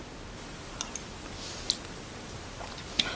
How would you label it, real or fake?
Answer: real